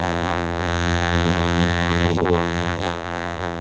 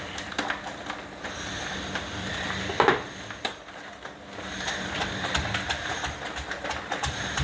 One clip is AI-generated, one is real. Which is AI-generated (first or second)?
first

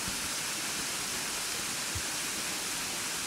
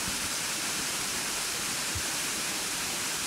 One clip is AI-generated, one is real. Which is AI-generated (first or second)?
second